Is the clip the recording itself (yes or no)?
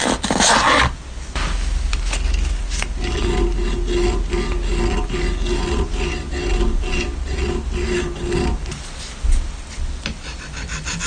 yes